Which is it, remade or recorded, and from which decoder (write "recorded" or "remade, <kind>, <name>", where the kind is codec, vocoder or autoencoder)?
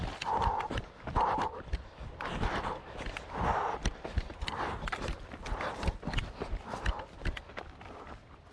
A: recorded